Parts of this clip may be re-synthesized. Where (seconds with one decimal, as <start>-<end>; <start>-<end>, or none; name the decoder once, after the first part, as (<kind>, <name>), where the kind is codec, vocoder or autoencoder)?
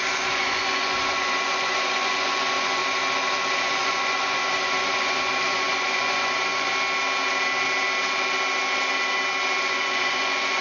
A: 0.0-2.8 (vocoder, Vocos); 3.6-6.7; 9.6-10.6